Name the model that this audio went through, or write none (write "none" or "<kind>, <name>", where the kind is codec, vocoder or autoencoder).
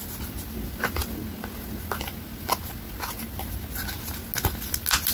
none